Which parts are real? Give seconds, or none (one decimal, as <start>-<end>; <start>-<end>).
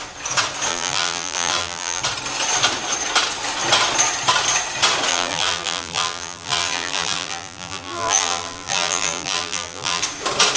0.0-0.7; 2.0-5.1; 10.0-10.6